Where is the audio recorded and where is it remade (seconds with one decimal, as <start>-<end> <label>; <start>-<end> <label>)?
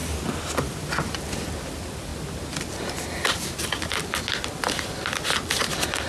0.0-6.1 recorded